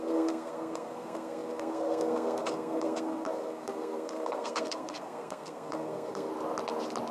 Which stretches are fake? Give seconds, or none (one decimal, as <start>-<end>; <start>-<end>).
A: 0.0-6.3